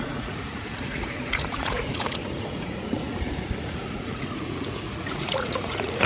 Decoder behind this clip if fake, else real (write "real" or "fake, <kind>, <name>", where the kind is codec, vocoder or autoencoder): fake, vocoder, Vocos